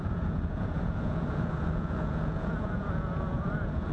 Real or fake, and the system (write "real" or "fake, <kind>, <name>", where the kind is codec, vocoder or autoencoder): fake, vocoder, Vocos